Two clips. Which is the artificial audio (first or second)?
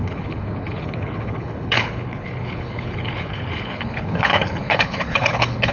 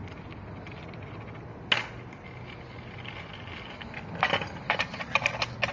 first